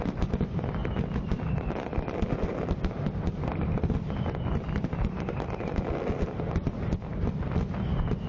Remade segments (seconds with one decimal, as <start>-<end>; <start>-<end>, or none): 0.8-1.4; 3.1-5.6